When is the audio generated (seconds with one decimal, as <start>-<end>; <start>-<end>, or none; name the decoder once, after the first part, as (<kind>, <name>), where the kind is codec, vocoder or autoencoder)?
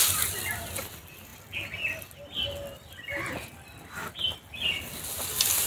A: none